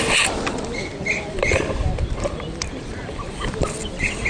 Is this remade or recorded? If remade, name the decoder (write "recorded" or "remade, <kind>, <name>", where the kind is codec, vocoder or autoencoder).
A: recorded